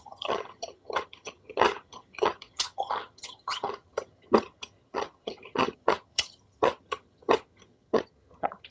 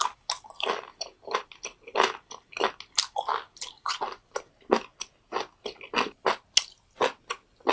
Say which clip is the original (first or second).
second